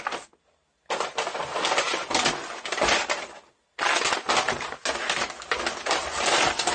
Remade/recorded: recorded